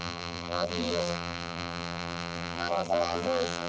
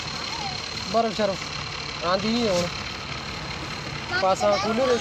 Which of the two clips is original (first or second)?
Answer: second